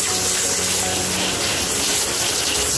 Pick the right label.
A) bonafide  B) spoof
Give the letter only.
A